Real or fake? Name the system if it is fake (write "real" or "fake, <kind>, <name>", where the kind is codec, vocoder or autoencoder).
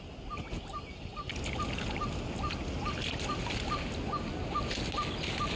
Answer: real